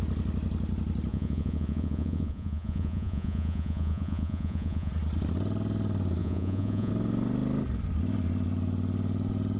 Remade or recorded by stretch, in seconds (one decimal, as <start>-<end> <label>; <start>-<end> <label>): 0.0-1.1 recorded; 1.1-4.9 remade; 4.9-6.2 recorded; 6.2-6.9 remade; 6.9-9.6 recorded